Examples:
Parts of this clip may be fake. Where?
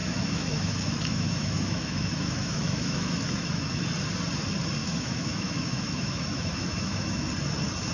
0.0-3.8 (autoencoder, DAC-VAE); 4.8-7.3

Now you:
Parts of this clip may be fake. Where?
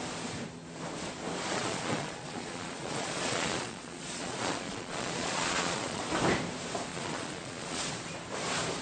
1.5-6.0 (vocoder, Vocos); 6.9-7.9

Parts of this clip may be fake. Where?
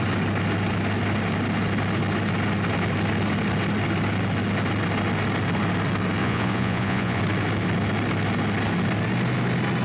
6.2-7.2 (vocoder, Vocos)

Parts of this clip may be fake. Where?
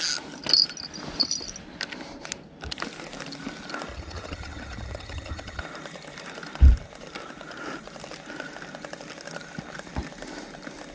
3.9-5.6 (vocoder, HiFi-GAN)